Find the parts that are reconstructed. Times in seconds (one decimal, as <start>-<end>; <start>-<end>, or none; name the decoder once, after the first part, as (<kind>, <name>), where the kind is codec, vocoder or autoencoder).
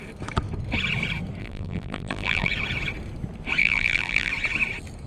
1.4-2.5 (vocoder, BigVGAN v2); 3.6-4.3